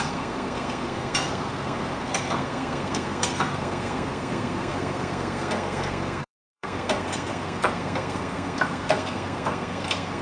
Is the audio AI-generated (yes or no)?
yes